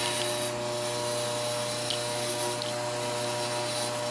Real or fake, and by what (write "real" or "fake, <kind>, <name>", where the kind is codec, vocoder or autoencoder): real